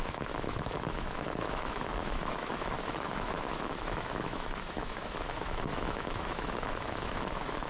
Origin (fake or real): fake